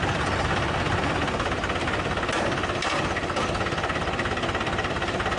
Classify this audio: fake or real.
real